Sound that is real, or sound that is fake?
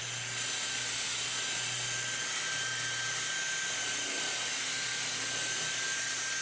real